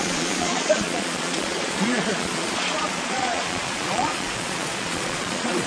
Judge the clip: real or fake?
fake